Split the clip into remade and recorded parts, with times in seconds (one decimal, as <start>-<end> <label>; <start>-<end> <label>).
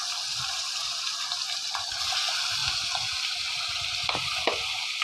0.0-5.0 recorded